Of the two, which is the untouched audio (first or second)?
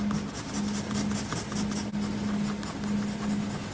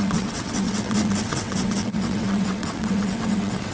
first